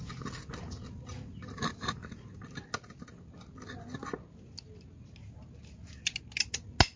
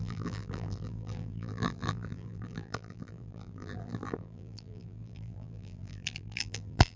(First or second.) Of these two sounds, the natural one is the first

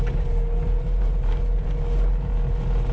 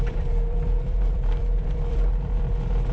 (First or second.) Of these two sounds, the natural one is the first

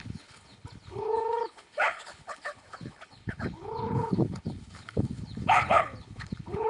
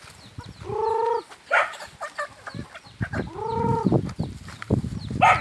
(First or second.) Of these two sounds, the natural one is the second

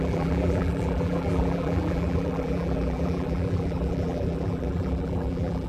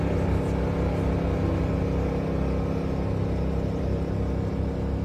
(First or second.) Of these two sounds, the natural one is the second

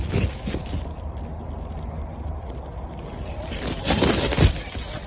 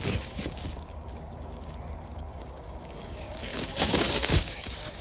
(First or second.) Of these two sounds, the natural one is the first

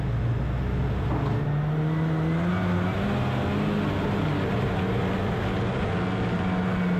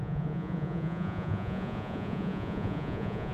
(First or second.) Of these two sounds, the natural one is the first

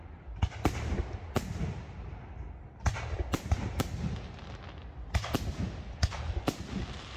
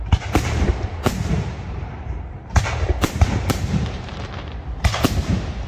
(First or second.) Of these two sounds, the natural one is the first